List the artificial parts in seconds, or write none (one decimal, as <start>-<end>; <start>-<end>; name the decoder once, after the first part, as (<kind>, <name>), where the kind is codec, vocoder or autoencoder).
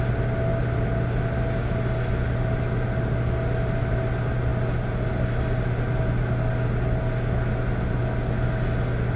none